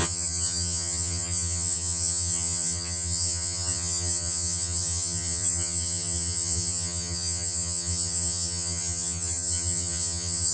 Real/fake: fake